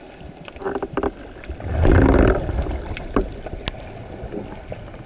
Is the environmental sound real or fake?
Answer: real